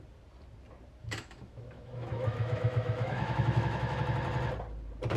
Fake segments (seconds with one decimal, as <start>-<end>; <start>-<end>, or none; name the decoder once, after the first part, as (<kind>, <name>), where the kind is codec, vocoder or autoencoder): 1.0-4.0 (autoencoder, DAC-VAE)